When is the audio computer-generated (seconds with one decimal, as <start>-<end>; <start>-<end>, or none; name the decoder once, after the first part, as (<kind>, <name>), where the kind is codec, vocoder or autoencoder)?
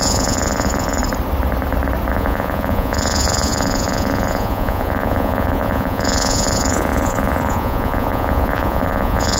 0.0-1.0 (vocoder, Vocos); 2.1-9.4